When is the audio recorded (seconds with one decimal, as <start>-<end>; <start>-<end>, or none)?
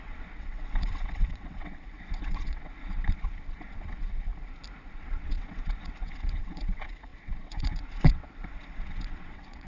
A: 4.3-4.9